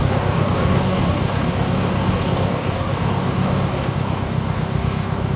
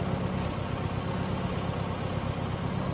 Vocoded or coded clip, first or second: first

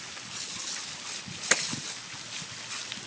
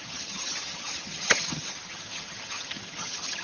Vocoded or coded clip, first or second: second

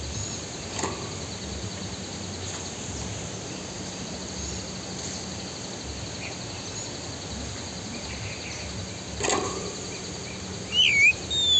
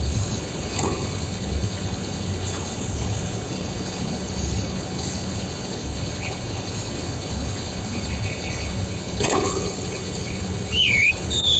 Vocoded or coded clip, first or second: second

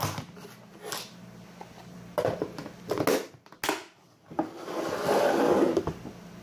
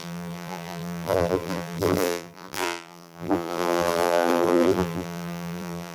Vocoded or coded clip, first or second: second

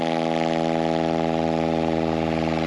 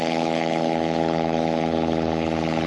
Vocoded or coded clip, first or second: second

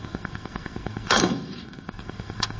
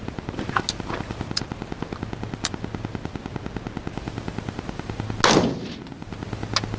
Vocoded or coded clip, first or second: first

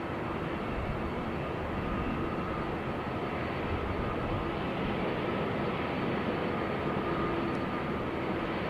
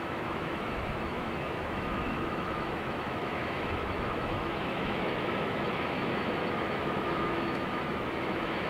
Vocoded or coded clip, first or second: second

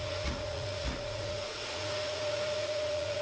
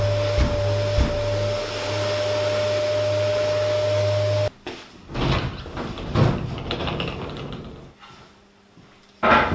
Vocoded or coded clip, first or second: first